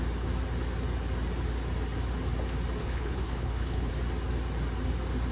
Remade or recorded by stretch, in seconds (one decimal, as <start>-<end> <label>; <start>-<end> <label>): 0.0-2.8 recorded; 2.8-3.9 remade; 3.9-5.3 recorded